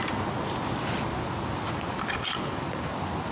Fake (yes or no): no